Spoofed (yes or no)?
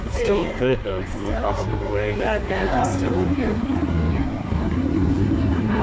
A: yes